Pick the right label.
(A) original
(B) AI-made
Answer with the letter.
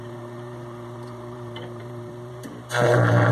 B